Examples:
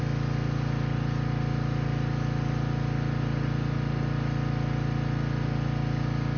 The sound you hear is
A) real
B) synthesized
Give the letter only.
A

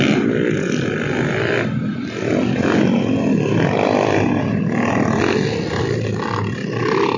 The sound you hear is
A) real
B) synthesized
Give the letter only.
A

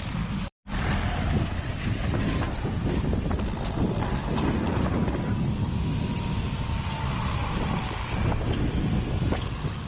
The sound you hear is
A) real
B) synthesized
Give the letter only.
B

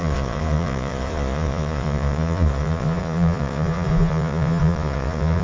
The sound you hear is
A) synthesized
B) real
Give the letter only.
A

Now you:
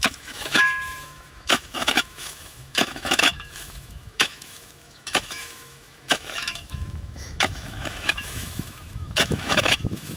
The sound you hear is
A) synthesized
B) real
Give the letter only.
A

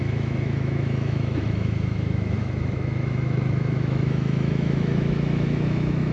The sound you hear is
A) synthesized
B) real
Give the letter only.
A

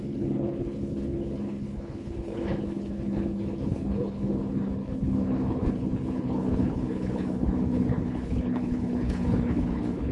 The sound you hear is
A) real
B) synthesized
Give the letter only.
B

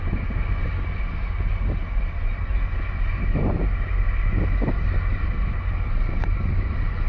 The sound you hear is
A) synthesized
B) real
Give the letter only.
B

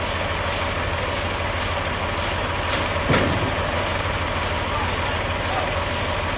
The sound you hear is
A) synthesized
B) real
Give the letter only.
B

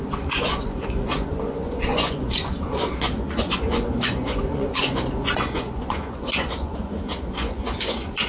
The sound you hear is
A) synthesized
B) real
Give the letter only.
A